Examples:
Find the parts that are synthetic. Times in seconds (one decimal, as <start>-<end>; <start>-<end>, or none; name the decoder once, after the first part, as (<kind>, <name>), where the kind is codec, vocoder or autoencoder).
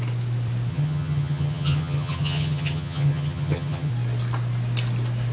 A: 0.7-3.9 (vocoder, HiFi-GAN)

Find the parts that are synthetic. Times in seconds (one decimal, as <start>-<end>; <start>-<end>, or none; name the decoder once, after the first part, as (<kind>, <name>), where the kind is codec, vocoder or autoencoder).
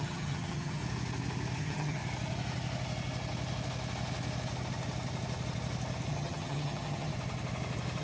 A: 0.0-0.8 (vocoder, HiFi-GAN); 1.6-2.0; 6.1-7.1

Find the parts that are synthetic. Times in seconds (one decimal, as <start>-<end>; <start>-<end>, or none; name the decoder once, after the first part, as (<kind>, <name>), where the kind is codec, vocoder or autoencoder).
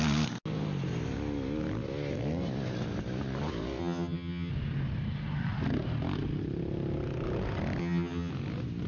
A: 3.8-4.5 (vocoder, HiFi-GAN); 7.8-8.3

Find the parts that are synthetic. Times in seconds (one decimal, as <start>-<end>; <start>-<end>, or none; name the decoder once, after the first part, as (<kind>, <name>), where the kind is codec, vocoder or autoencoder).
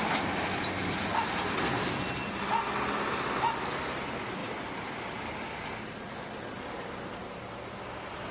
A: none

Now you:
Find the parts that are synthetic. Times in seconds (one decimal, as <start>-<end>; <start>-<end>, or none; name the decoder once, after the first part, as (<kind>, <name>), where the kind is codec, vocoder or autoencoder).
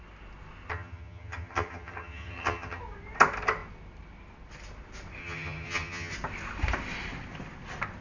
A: 0.7-2.8 (vocoder, HiFi-GAN); 5.2-6.1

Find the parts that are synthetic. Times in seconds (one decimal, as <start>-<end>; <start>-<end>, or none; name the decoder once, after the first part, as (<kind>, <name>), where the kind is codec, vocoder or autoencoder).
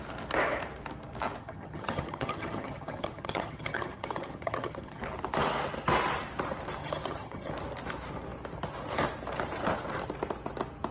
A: 1.4-5.0 (vocoder, HiFi-GAN); 6.8-7.5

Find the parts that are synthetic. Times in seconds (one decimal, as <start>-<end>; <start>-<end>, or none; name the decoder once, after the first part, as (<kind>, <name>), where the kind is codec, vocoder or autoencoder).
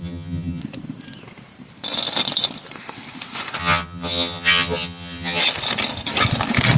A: 0.0-0.6 (vocoder, HiFi-GAN); 3.6-5.4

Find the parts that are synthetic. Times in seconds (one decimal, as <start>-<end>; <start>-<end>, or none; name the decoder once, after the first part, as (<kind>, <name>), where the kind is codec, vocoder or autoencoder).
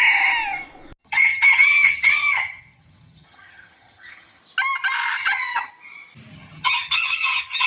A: 1.0-4.4 (vocoder, HiFi-GAN); 5.2-5.7; 6.3-7.7